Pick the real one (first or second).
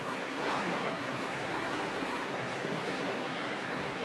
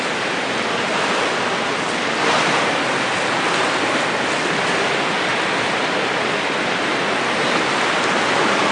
second